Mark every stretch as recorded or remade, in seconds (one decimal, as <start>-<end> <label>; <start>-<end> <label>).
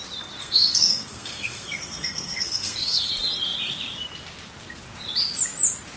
0.0-0.4 recorded; 0.4-3.1 remade; 3.1-6.0 recorded